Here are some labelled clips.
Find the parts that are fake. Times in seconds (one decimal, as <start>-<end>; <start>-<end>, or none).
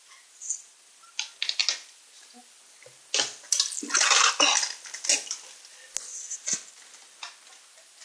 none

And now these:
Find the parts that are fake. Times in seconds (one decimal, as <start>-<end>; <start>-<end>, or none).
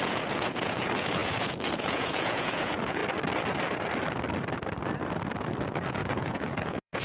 0.0-3.0; 5.9-7.0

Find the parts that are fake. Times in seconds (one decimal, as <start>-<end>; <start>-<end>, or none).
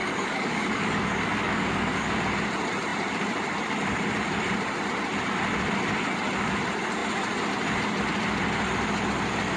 0.0-2.1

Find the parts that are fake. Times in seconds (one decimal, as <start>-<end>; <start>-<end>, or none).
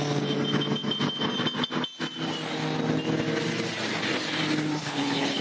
4.8-5.4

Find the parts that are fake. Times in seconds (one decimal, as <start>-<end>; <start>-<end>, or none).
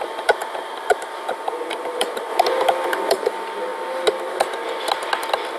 0.0-2.3; 3.1-3.7